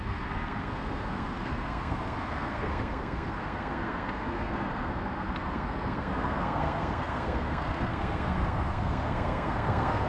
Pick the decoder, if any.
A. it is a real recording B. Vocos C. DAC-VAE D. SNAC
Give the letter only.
D